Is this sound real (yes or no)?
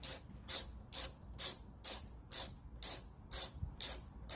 no